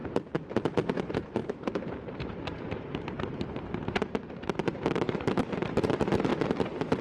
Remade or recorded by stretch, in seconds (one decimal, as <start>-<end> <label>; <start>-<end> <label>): 0.0-1.0 recorded; 1.0-6.3 remade; 6.3-7.0 recorded